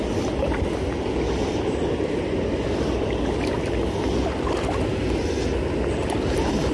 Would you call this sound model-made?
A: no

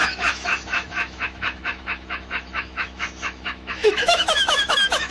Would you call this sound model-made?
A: yes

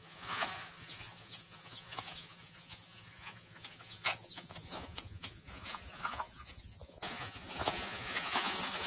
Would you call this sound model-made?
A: yes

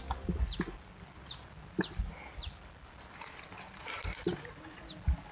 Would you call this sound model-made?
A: no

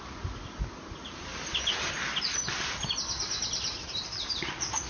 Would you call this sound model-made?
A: no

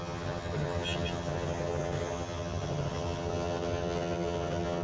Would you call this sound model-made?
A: yes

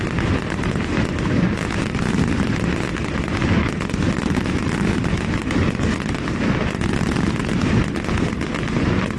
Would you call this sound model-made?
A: no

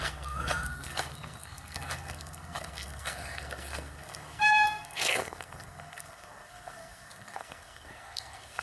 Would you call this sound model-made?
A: yes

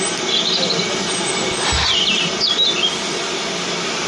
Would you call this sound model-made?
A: no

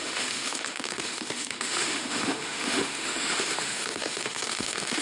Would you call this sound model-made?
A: yes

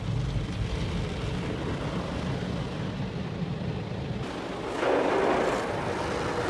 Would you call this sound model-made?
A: no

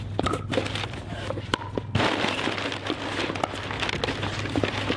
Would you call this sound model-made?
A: no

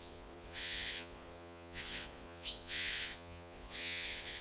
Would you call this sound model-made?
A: yes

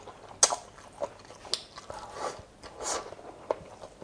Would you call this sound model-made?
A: no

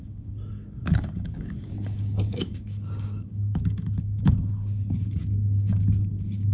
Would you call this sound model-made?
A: yes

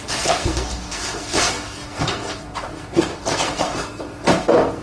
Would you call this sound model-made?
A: yes